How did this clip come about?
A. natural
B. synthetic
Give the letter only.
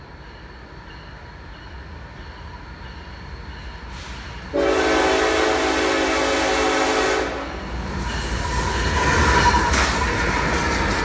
A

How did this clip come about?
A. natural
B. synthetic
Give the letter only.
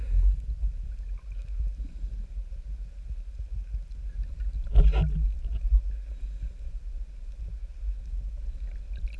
A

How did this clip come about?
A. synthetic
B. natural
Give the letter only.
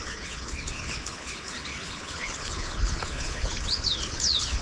A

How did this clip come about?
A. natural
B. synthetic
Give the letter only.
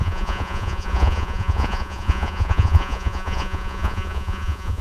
B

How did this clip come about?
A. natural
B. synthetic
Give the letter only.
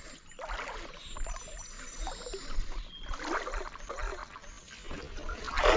A